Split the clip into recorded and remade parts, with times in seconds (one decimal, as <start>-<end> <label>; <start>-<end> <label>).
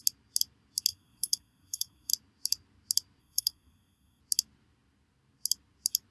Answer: 0.0-0.9 recorded; 0.9-2.1 remade; 2.1-3.2 recorded; 3.2-4.2 remade; 4.2-6.1 recorded